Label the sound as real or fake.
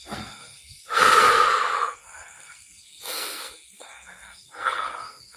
fake